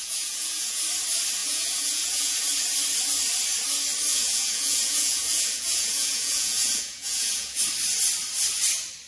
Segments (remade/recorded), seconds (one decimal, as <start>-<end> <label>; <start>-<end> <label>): 0.0-0.8 remade; 0.8-1.4 recorded; 1.4-2.4 remade; 2.4-4.1 recorded; 4.1-7.6 remade; 7.6-9.1 recorded